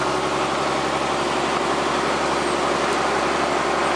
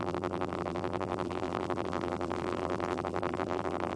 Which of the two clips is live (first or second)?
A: first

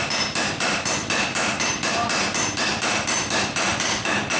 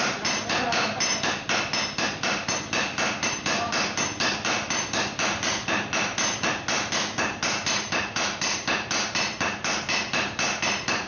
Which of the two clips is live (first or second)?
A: second